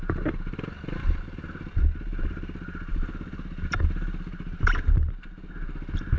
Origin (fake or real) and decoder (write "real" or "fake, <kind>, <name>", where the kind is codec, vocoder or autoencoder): real